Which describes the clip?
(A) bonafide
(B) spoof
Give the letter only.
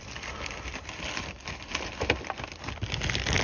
A